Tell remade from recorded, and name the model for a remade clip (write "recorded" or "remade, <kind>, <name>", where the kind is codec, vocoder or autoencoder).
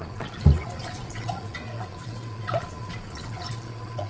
remade, vocoder, Vocos